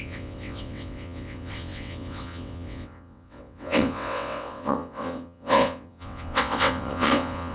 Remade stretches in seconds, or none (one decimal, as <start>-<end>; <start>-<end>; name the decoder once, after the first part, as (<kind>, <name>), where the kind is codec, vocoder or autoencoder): 0.0-7.5 (vocoder, WaveNeXt)